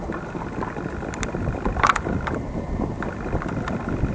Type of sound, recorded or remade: recorded